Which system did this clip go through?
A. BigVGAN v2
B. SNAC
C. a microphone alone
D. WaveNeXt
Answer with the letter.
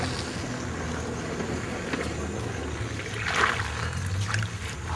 C